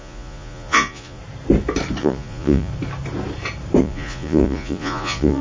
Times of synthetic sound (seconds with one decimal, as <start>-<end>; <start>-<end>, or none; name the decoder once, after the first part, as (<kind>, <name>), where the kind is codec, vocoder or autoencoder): 0.0-1.2 (vocoder, Vocos); 2.0-2.7; 3.8-5.4